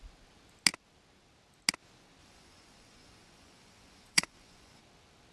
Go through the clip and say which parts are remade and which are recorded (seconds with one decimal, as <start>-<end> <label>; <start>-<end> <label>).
0.0-2.2 recorded; 2.2-4.8 remade; 4.8-5.3 recorded